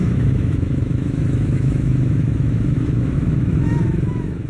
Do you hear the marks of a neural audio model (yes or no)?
yes